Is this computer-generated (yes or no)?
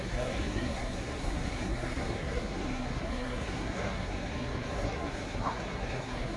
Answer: yes